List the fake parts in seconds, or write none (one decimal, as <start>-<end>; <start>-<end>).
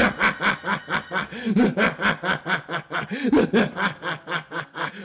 none